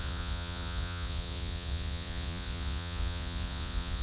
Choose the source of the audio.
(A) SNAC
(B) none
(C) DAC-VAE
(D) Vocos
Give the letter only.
D